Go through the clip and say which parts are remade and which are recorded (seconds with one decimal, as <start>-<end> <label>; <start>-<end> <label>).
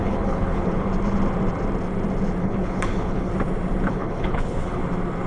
0.0-0.9 remade; 0.9-2.4 recorded; 2.4-3.3 remade; 3.3-3.9 recorded; 3.9-4.8 remade; 4.8-5.3 recorded